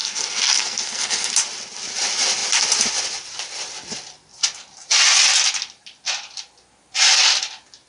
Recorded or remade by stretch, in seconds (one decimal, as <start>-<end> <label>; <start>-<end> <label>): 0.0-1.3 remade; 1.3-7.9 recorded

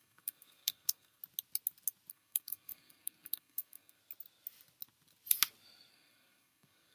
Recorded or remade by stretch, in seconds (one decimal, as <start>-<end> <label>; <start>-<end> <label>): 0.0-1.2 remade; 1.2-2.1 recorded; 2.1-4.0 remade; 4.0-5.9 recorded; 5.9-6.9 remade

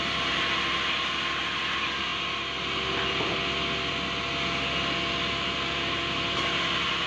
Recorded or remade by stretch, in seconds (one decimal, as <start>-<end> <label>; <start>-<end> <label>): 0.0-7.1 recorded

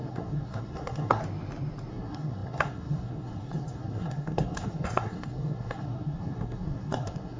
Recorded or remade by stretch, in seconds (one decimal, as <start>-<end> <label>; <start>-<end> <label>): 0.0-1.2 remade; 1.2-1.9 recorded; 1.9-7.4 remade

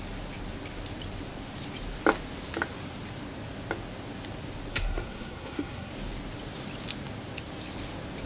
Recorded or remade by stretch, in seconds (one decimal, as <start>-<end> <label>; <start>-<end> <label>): 0.0-4.7 recorded; 4.7-5.9 remade; 5.9-8.3 recorded

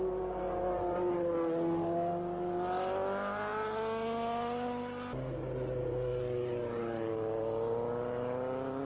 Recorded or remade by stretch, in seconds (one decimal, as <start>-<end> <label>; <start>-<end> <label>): 0.0-8.8 recorded